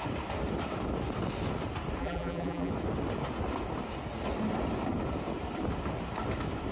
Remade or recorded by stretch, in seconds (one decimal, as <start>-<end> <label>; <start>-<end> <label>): 0.0-2.0 recorded; 2.0-2.7 remade; 2.7-6.7 recorded